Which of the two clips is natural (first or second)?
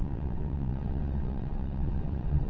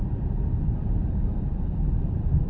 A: second